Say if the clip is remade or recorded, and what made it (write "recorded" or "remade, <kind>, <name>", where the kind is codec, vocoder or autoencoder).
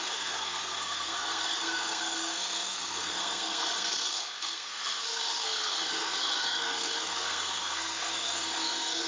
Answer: remade, codec, SNAC